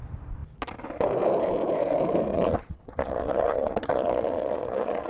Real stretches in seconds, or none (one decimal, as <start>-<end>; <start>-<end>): 0.0-2.3